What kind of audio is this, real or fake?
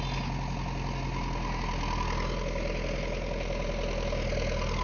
real